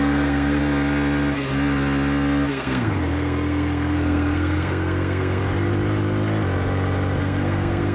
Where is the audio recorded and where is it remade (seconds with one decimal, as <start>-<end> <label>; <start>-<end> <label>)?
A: 0.0-0.6 remade; 0.6-2.5 recorded; 2.5-5.4 remade; 5.4-7.2 recorded; 7.2-7.9 remade